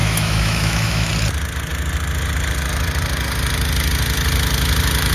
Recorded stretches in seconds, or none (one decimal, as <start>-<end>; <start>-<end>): 1.1-5.1